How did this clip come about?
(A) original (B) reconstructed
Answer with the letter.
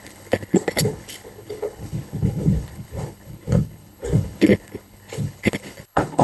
B